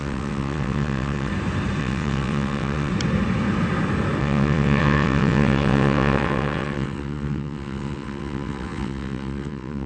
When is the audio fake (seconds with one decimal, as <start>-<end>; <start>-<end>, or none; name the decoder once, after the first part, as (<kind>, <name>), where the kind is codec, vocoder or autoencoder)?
0.0-1.3 (vocoder, WaveNeXt); 1.8-2.9; 4.2-9.9